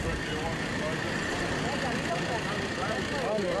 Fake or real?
real